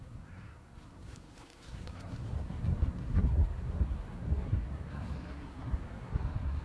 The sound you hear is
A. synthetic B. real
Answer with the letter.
A